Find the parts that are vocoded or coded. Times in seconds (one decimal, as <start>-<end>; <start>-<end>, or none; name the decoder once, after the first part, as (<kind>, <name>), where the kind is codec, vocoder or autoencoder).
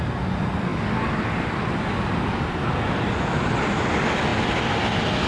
none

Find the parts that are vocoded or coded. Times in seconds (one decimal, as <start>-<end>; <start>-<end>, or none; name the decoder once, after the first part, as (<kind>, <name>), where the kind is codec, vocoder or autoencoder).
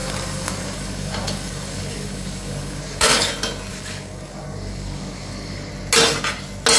0.0-3.3 (codec, DAC); 3.7-5.7